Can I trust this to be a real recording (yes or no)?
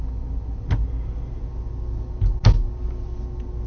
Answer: yes